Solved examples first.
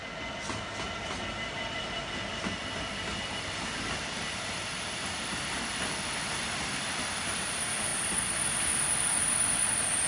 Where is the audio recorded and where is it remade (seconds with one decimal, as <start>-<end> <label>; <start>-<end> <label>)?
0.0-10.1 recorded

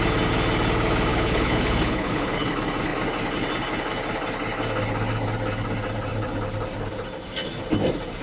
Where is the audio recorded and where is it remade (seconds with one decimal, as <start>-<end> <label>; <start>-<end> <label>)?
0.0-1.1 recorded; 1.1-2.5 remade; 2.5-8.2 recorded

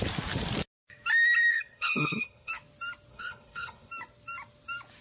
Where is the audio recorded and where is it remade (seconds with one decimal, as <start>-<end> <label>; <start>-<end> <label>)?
0.0-1.5 recorded; 1.5-2.5 remade; 2.5-3.1 recorded; 3.1-3.9 remade; 3.9-5.0 recorded

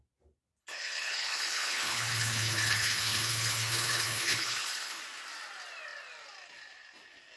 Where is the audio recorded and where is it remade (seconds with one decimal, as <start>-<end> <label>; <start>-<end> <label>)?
0.0-0.6 recorded; 0.6-5.0 remade; 5.0-7.4 recorded

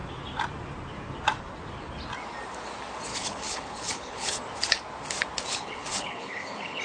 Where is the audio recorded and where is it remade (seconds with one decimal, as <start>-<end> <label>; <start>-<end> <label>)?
0.0-3.1 recorded; 3.1-4.4 remade; 4.4-5.5 recorded; 5.5-6.8 remade

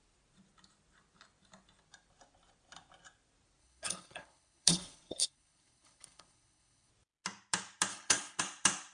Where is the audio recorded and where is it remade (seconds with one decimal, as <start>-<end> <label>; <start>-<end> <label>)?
0.0-3.6 recorded; 3.6-6.9 remade; 6.9-7.9 recorded; 7.9-8.4 remade; 8.4-8.9 recorded